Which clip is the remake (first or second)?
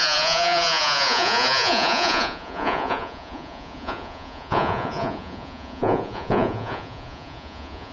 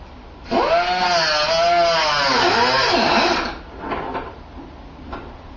first